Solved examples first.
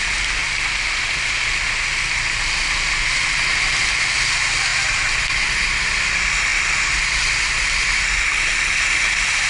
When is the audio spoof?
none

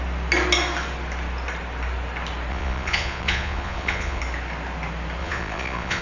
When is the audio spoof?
2.5-4.2; 5.2-6.0

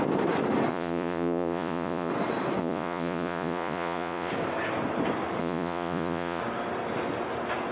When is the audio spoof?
0.7-2.1; 2.6-4.3; 5.4-6.4

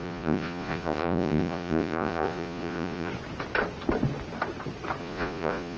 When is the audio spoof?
0.0-3.1; 5.0-5.8

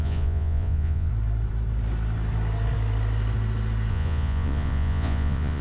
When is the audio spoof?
0.0-1.1; 3.9-5.6